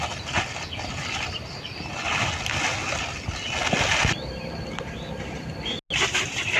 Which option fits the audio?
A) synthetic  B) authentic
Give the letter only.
B